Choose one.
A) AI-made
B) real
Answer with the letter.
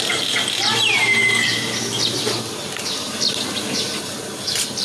B